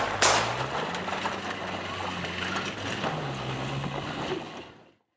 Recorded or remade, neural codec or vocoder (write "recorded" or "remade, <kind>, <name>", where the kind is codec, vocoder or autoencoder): recorded